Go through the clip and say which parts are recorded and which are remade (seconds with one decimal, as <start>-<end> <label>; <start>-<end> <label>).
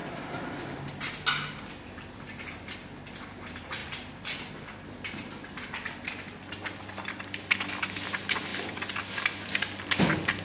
0.0-10.4 recorded